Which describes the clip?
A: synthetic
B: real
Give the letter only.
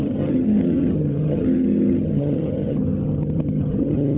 A